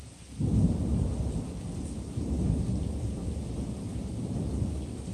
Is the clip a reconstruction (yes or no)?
no